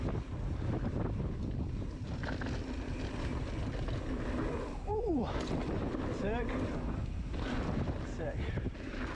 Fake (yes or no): no